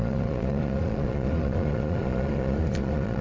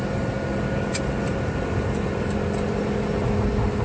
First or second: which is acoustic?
second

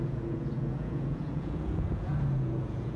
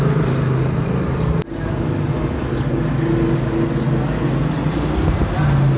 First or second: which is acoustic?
second